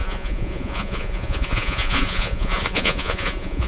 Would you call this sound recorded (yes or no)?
no